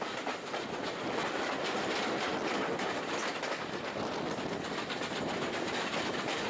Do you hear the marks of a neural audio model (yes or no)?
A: no